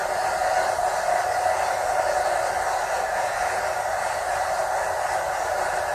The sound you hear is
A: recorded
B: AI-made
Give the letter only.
A